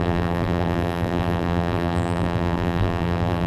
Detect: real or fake fake